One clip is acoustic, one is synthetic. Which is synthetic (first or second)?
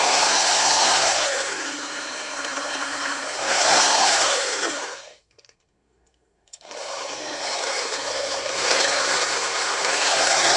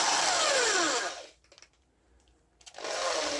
first